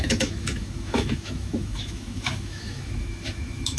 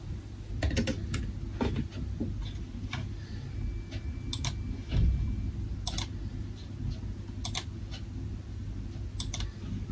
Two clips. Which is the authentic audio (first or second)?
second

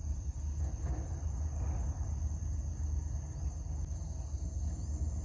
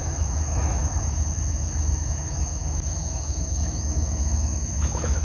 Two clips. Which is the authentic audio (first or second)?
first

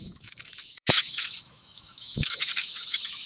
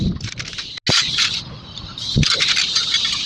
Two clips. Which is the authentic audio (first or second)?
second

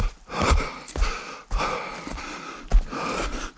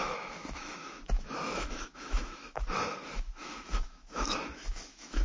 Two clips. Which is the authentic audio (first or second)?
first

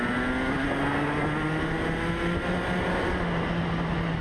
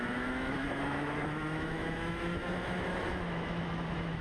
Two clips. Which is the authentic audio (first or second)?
first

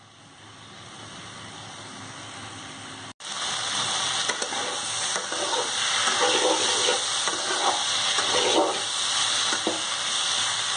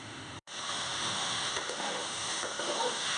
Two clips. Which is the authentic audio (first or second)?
first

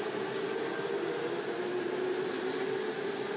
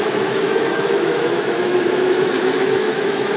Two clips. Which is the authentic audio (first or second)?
first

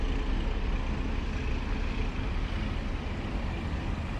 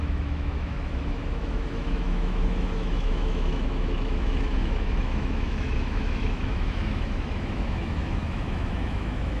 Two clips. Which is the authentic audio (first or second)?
first